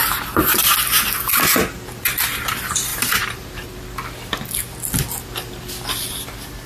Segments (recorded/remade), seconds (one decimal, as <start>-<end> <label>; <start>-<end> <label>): 0.0-2.9 recorded; 2.9-3.7 remade; 3.7-6.7 recorded